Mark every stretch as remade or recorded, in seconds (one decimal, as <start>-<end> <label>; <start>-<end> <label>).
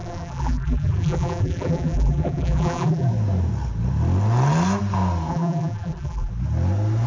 0.0-3.1 remade; 3.1-5.3 recorded; 5.3-6.3 remade; 6.3-7.1 recorded